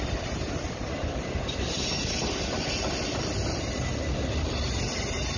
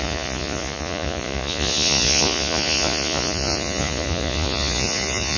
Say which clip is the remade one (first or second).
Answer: second